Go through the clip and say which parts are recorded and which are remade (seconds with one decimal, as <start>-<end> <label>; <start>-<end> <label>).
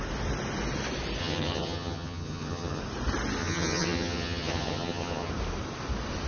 0.0-1.2 recorded; 1.2-2.8 remade; 2.8-3.4 recorded; 3.4-5.3 remade; 5.3-6.3 recorded